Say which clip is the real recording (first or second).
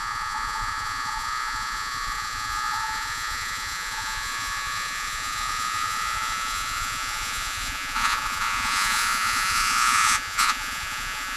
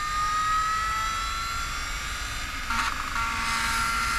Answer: second